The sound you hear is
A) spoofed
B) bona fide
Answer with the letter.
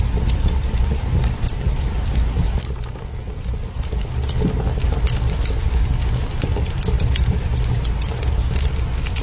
B